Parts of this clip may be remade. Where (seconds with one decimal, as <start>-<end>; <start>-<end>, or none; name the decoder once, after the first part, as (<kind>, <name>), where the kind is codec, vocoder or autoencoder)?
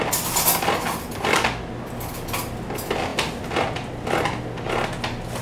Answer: none